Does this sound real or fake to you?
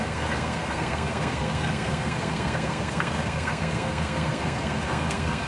fake